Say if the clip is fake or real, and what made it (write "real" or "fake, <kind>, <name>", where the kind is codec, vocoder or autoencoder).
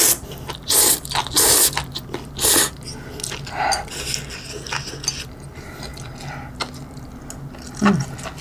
real